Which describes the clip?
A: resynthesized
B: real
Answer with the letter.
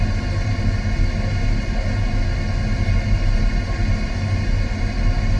B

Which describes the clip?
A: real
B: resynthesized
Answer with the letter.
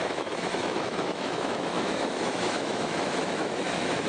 B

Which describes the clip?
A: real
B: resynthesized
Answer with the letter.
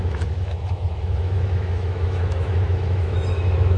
B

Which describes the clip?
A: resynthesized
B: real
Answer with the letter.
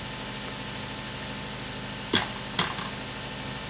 B